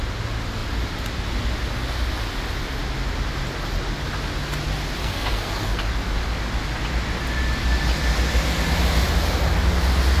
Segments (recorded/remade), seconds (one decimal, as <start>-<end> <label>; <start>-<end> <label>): 0.0-5.0 recorded; 5.0-5.9 remade; 5.9-10.2 recorded